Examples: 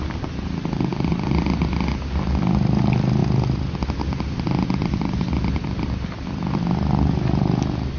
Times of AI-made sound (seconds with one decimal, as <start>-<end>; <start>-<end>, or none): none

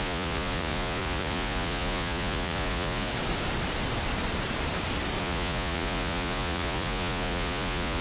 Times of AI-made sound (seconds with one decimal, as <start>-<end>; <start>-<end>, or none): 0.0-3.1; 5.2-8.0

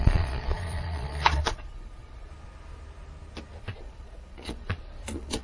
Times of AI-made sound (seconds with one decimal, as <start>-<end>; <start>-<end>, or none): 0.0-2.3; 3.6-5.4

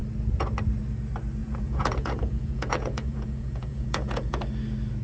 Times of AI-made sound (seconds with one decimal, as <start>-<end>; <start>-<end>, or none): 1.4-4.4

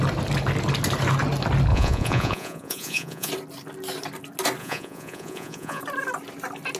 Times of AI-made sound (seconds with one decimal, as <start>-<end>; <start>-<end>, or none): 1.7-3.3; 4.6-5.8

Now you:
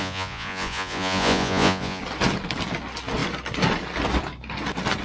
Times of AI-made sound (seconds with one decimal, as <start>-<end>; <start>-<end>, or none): 0.0-2.0

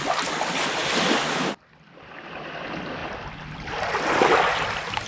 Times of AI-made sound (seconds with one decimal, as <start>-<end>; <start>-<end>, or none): none